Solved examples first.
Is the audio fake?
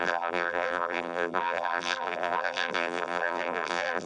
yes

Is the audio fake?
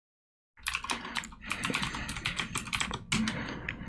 no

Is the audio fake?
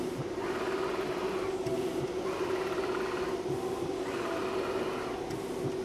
no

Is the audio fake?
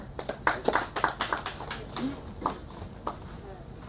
no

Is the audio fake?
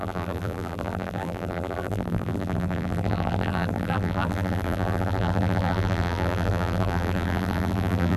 yes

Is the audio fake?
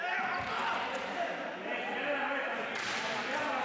no